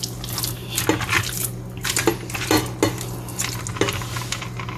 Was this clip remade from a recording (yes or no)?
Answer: no